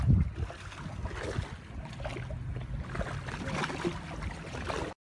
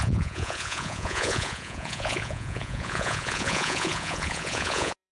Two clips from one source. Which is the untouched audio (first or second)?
first